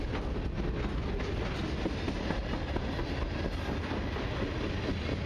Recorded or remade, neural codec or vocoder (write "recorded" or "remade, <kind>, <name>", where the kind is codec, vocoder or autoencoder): recorded